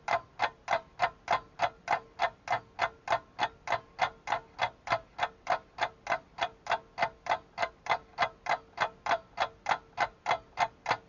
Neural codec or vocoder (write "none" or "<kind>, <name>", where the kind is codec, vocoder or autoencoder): none